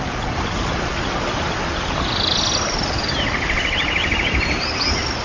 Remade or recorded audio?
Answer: recorded